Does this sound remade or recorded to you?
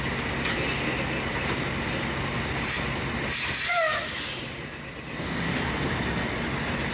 recorded